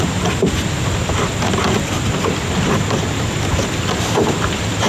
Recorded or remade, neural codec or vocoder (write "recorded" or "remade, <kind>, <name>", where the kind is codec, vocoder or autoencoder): recorded